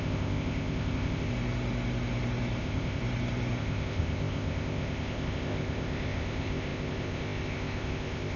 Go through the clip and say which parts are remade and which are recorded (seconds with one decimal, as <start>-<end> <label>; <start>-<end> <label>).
0.0-1.3 remade; 1.3-2.6 recorded; 2.6-3.0 remade; 3.0-3.6 recorded; 3.6-8.4 remade